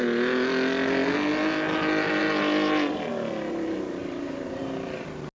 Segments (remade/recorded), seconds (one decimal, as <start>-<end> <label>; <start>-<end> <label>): 0.0-4.0 recorded; 4.0-4.6 remade; 4.6-5.4 recorded

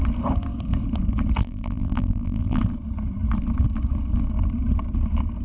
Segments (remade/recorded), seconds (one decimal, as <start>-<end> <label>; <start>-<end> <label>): 0.0-1.4 recorded; 1.4-2.6 remade; 2.6-5.4 recorded

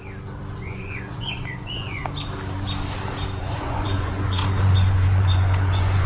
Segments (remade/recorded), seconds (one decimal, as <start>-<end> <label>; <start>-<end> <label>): 0.0-0.6 recorded; 0.6-2.0 remade; 2.0-3.4 recorded; 3.4-6.1 remade

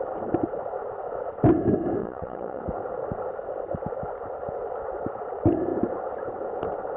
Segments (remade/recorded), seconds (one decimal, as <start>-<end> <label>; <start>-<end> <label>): 0.0-2.0 recorded; 2.0-2.6 remade; 2.6-7.0 recorded

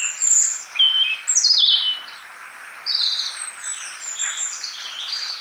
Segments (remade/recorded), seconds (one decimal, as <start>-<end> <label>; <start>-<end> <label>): 0.0-5.4 recorded